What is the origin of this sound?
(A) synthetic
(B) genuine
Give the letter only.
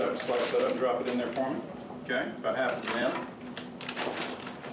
A